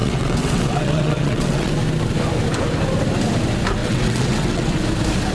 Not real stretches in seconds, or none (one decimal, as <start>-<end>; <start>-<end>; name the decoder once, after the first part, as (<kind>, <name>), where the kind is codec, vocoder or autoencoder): 0.0-1.7 (vocoder, WaveNeXt); 3.8-4.8